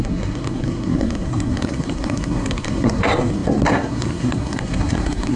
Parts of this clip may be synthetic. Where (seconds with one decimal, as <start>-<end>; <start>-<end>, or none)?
0.0-5.4

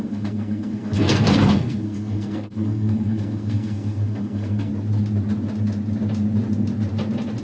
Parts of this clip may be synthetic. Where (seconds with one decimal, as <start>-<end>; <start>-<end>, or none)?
0.0-4.7

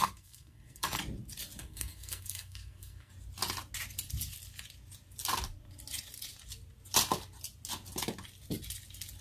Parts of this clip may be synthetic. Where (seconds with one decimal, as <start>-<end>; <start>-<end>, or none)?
0.0-1.0; 1.6-3.1

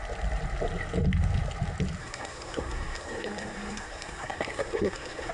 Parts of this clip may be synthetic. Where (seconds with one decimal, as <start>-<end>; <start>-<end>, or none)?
2.0-5.3

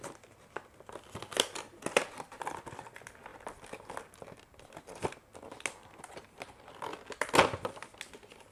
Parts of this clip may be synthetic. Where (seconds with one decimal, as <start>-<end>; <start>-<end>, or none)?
none